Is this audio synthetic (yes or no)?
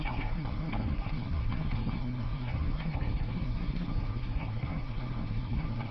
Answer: yes